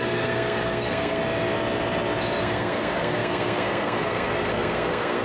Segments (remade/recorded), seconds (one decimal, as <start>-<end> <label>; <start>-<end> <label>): 0.0-1.2 remade; 1.2-2.4 recorded; 2.4-5.2 remade